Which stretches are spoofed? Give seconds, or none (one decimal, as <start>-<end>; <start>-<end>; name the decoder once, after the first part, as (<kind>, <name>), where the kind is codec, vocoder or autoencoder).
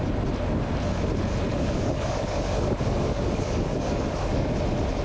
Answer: 1.5-4.5 (codec, DAC)